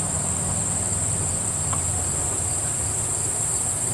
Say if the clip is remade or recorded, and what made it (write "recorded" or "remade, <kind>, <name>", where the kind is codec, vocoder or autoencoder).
recorded